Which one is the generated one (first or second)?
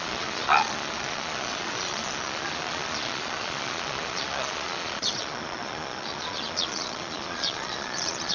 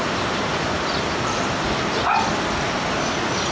first